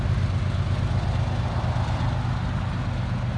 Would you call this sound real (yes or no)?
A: yes